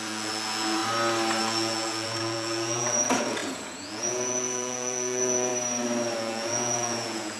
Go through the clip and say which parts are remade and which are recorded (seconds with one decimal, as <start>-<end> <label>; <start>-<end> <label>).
0.0-0.8 remade; 0.8-1.4 recorded; 1.4-5.5 remade; 5.5-6.2 recorded; 6.2-7.4 remade